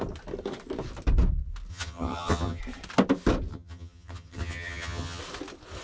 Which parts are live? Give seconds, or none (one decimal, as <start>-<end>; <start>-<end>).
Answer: 0.0-1.7; 2.6-3.5; 5.2-5.8